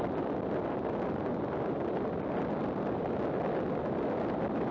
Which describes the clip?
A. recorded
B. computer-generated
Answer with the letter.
A